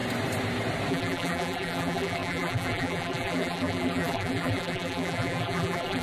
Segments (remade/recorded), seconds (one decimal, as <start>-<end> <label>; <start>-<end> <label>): 0.0-0.9 recorded; 0.9-6.0 remade